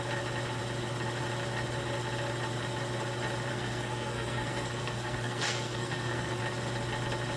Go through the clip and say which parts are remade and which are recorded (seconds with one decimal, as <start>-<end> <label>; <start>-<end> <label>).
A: 0.0-3.5 recorded; 3.5-6.4 remade; 6.4-7.4 recorded